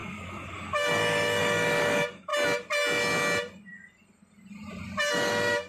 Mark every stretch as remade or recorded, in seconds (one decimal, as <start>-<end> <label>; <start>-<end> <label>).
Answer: 0.0-2.3 remade; 2.3-5.1 recorded; 5.1-5.7 remade